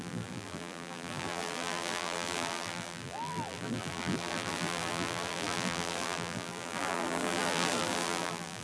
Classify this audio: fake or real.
fake